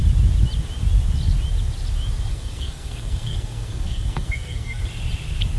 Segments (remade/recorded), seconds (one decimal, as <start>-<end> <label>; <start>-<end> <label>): 0.0-2.3 recorded; 2.3-4.8 remade; 4.8-5.6 recorded